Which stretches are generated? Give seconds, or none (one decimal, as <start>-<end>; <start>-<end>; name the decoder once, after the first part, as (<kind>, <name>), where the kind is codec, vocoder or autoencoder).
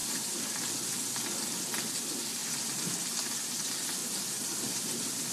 0.0-0.7 (vocoder, BigVGAN v2); 2.4-3.4; 4.0-5.3